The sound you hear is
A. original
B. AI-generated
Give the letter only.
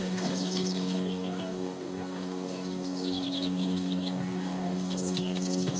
B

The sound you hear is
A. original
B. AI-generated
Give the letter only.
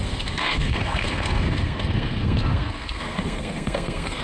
B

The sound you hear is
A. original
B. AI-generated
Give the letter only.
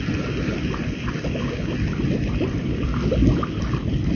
A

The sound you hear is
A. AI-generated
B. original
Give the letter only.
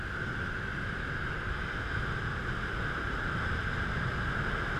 B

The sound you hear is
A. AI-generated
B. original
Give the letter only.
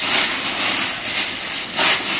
B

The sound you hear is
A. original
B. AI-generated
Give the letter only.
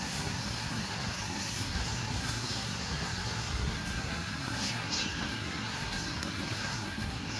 B